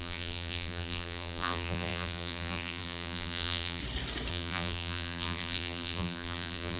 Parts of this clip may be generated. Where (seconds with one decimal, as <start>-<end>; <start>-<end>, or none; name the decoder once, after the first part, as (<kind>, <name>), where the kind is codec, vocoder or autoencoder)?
0.0-3.8 (vocoder, BigVGAN v2); 4.3-6.8